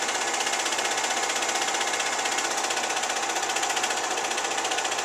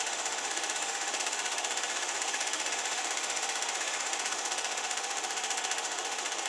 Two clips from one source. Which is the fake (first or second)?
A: second